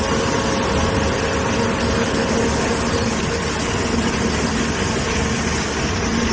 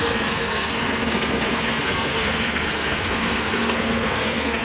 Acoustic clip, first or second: first